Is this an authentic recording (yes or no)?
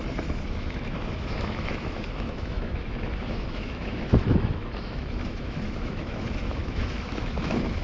no